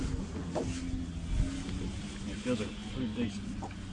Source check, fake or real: real